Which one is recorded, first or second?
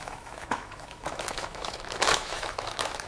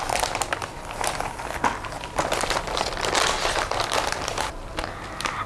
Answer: second